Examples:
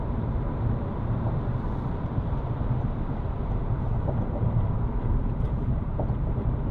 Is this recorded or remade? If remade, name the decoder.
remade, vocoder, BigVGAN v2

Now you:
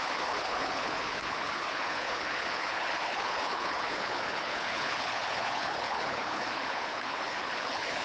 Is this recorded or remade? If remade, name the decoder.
remade, codec, HILCodec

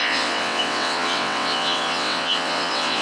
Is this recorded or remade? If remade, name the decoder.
remade, vocoder, WaveNeXt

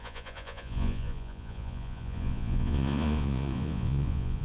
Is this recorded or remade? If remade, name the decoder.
remade, vocoder, Vocos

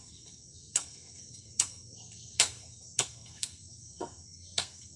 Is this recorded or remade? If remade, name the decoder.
remade, codec, SNAC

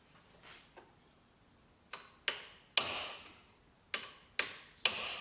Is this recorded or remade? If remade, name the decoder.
recorded